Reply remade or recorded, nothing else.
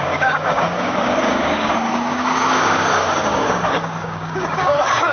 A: remade